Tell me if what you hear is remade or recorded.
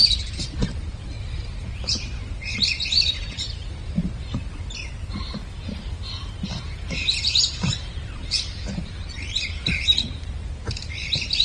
remade